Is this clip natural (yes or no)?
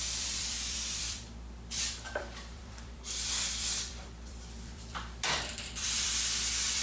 no